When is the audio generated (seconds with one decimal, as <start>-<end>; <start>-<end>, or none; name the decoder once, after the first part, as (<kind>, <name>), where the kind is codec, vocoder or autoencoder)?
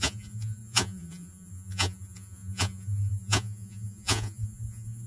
0.0-5.1 (vocoder, Vocos)